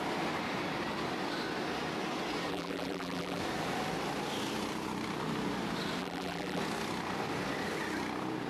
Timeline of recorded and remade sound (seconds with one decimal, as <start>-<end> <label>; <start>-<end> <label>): 0.0-2.5 recorded; 2.5-3.4 remade; 3.4-6.0 recorded; 6.0-6.6 remade; 6.6-8.5 recorded